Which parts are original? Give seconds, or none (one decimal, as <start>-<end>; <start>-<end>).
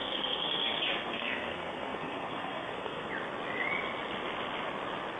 3.1-5.2